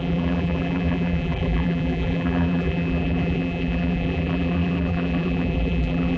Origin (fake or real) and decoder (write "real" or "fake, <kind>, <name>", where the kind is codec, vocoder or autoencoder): fake, vocoder, BigVGAN v2